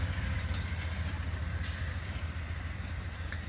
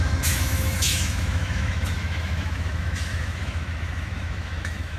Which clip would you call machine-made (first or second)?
second